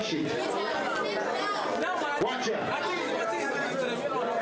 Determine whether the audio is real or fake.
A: real